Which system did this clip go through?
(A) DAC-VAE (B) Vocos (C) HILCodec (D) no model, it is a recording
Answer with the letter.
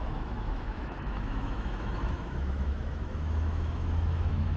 A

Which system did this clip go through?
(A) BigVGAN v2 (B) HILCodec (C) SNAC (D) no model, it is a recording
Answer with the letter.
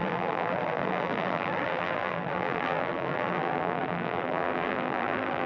A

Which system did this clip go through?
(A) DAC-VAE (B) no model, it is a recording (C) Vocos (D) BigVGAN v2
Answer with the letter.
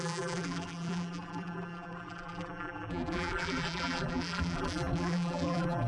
D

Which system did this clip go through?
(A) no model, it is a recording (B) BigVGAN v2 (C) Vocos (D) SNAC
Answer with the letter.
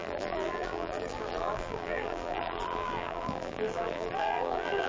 B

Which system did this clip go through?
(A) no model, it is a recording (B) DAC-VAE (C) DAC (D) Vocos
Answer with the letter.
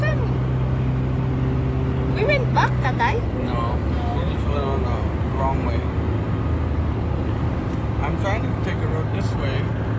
A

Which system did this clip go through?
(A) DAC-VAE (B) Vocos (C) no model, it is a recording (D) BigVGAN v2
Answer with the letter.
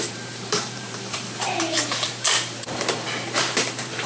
D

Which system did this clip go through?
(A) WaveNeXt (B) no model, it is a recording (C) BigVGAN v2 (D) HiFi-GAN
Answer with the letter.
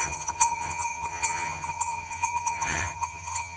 D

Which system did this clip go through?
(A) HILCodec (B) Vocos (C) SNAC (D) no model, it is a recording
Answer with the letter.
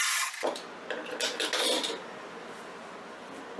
D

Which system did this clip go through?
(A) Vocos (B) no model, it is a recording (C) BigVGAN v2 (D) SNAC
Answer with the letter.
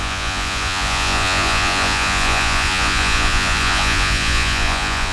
A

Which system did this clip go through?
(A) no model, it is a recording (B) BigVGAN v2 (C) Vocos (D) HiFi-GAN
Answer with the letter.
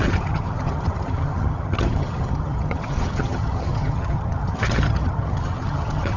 D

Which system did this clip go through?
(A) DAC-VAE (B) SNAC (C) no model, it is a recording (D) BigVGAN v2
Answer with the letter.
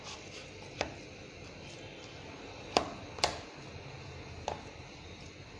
C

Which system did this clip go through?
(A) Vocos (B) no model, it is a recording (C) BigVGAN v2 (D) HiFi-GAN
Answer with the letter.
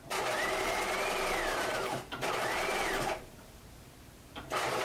C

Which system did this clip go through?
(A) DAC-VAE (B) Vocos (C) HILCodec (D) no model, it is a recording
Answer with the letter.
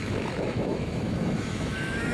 A